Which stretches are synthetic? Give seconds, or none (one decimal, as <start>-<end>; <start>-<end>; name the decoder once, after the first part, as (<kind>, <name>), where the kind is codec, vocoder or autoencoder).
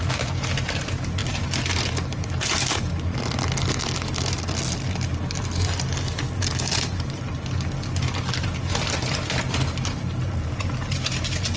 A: none